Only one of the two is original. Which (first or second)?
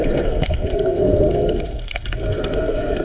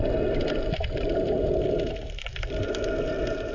second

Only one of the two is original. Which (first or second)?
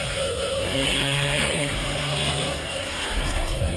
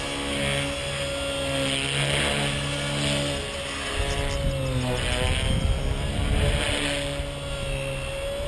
second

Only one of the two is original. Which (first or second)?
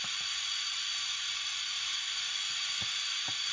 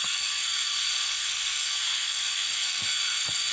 first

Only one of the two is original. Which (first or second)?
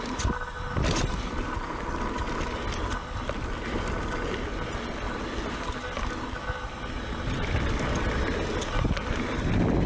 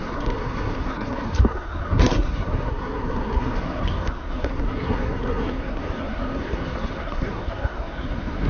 first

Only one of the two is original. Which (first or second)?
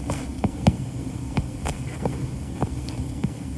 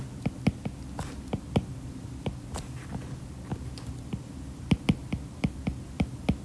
second